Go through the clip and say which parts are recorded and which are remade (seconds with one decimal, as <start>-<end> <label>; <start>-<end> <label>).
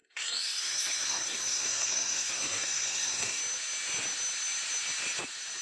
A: 0.0-3.4 remade; 3.4-5.6 recorded